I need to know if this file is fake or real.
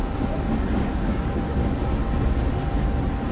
real